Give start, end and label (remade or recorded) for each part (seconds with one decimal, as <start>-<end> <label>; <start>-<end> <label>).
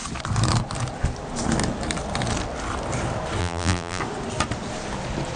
0.0-3.4 recorded; 3.4-4.0 remade; 4.0-5.4 recorded